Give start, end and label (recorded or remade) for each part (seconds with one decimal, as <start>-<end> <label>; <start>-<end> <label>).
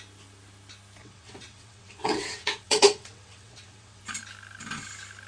0.0-1.0 recorded; 1.0-4.0 remade; 4.0-5.3 recorded